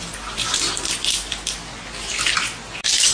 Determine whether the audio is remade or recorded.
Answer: recorded